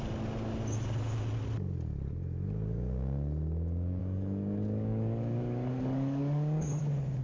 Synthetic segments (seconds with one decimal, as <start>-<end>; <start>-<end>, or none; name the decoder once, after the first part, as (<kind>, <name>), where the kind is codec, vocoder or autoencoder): 4.0-6.8 (codec, DAC)